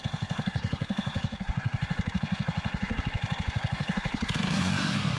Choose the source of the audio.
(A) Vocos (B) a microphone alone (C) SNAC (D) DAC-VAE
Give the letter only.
C